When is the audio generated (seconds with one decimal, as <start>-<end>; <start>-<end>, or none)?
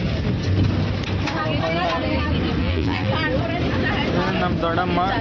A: 2.6-3.1